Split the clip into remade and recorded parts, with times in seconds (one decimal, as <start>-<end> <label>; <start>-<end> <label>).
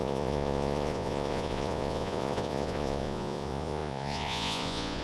0.0-5.0 remade